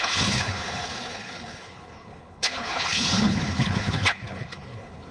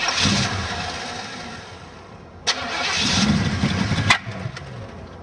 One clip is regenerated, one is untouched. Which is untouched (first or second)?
second